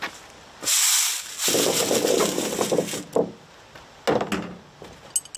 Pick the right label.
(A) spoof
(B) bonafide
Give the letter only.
B